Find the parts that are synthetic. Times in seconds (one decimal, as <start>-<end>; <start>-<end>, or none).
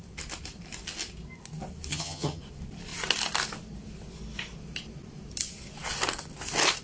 1.9-2.4